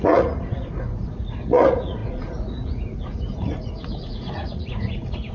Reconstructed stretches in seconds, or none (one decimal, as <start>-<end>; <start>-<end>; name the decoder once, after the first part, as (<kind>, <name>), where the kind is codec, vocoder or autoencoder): 0.0-5.3 (vocoder, Vocos)